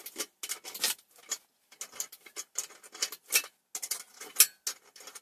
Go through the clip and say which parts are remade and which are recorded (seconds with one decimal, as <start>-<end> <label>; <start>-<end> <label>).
0.0-5.2 recorded